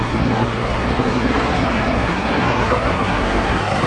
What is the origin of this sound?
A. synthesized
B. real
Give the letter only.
A